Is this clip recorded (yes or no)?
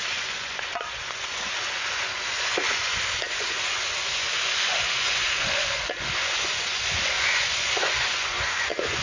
no